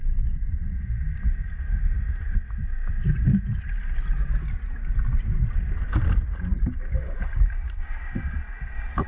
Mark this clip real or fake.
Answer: real